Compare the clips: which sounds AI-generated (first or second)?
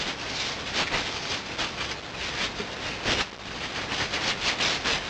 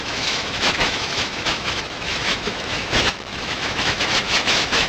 second